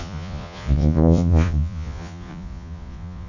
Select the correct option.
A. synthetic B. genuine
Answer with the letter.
A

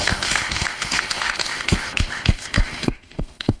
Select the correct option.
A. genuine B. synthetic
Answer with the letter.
B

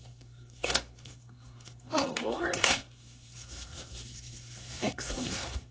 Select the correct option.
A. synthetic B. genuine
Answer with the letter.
A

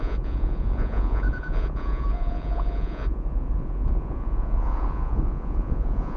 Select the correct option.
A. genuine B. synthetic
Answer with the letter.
B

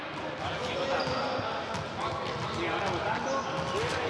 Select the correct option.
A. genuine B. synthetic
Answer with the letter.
A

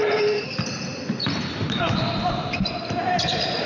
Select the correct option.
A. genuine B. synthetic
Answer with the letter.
B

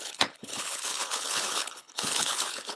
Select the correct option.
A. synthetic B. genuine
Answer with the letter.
A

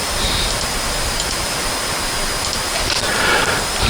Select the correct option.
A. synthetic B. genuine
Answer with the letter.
B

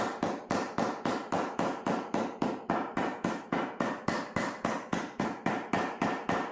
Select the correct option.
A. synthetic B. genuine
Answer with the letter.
A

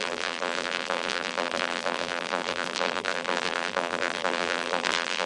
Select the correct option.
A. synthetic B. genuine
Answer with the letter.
A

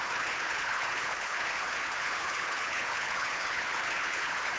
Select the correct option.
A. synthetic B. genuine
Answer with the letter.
A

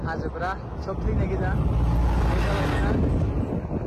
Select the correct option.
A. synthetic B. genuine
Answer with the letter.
B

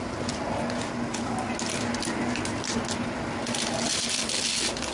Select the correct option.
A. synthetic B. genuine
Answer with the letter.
B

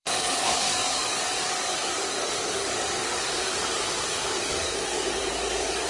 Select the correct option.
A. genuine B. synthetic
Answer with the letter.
B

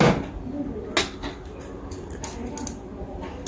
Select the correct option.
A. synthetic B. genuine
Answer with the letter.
B